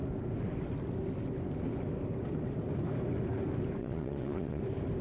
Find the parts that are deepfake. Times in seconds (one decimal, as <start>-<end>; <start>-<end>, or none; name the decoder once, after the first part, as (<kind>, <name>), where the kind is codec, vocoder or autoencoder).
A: 3.8-4.6 (vocoder, Vocos)